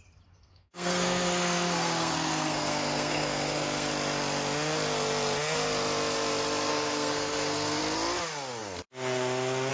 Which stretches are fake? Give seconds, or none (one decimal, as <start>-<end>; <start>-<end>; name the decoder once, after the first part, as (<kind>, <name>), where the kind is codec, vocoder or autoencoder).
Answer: 0.4-3.9 (codec, SNAC); 6.7-7.8